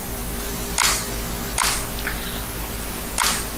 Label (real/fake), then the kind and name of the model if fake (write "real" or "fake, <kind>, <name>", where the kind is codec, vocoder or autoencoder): real